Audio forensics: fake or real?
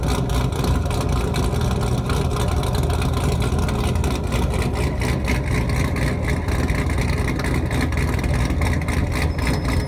real